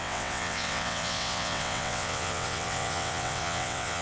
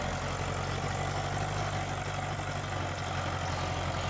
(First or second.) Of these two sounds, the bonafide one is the second